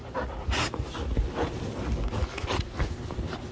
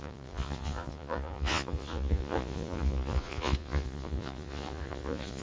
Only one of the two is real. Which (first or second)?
first